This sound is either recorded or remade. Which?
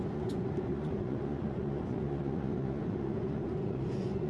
remade